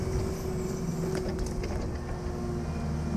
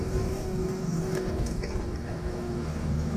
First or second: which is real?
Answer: first